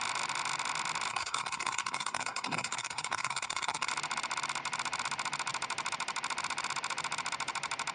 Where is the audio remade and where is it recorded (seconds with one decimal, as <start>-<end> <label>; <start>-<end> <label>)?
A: 0.0-1.1 recorded; 1.1-3.9 remade; 3.9-7.9 recorded